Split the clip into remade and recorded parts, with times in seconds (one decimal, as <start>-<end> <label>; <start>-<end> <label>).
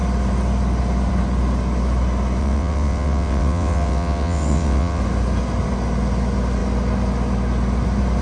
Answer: 0.0-2.4 recorded; 2.4-5.0 remade; 5.0-8.2 recorded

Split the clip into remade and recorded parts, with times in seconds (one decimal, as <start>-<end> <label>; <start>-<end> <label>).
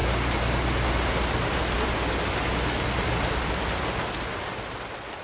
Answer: 0.0-5.2 recorded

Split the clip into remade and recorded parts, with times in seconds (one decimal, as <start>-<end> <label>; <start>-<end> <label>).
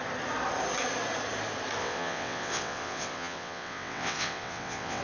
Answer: 0.0-1.8 recorded; 1.8-5.0 remade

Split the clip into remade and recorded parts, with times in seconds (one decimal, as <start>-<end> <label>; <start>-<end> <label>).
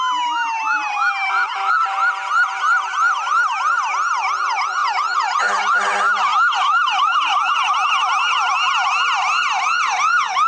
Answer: 0.0-10.5 recorded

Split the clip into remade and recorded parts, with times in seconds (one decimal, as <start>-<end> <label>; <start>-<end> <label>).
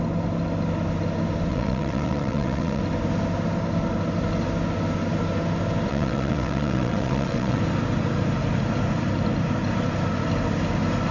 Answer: 0.0-1.5 recorded; 1.5-2.8 remade; 2.8-5.9 recorded; 5.9-7.6 remade; 7.6-11.1 recorded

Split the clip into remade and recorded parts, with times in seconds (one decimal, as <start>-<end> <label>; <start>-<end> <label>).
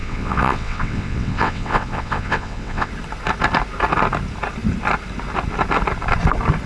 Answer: 0.0-2.9 remade; 2.9-6.7 recorded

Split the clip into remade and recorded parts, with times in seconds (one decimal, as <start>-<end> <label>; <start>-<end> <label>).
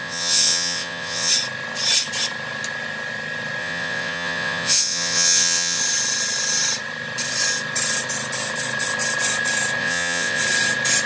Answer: 0.0-1.3 remade; 1.3-3.6 recorded; 3.6-5.8 remade; 5.8-9.8 recorded; 9.8-10.4 remade; 10.4-11.1 recorded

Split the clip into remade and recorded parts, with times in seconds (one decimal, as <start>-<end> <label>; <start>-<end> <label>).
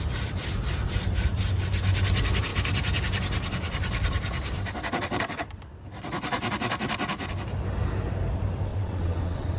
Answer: 0.0-8.7 recorded; 8.7-9.6 remade